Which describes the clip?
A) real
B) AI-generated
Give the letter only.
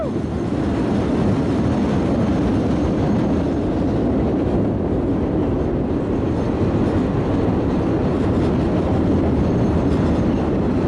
A